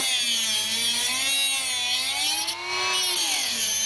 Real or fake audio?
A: real